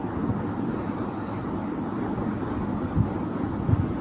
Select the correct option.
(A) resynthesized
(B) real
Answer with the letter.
B